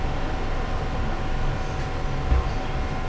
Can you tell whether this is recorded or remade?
recorded